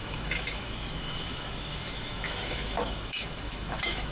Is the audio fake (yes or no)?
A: yes